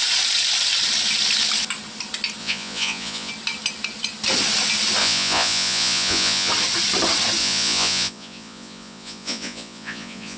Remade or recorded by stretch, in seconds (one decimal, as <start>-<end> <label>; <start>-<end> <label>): 0.0-2.4 recorded; 2.4-3.3 remade; 3.3-5.0 recorded; 5.0-6.5 remade; 6.5-7.4 recorded; 7.4-10.4 remade

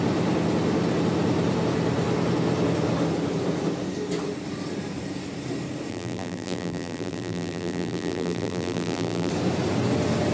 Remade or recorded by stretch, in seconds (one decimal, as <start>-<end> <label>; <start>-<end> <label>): 0.0-5.9 recorded; 5.9-9.3 remade; 9.3-10.3 recorded

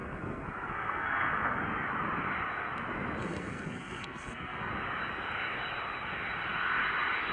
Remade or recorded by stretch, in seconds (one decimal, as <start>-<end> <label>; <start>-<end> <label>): 0.0-1.6 remade; 1.6-3.2 recorded; 3.2-4.7 remade; 4.7-7.3 recorded